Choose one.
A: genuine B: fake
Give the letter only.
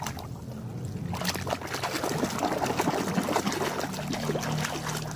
A